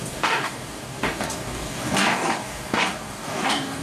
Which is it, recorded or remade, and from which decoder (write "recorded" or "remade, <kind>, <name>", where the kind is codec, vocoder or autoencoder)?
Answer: remade, codec, DAC